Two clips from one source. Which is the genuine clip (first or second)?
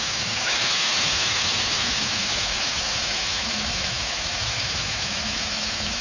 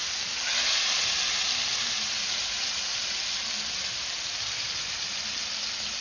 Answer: second